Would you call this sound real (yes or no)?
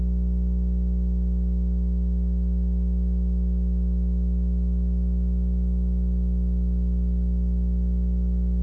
yes